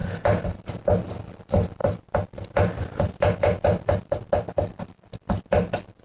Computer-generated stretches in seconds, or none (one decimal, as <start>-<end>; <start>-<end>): 0.0-0.8